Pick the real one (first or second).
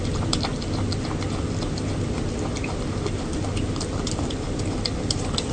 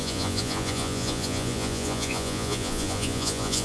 first